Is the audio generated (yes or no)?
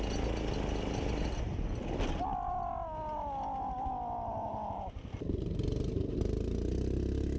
no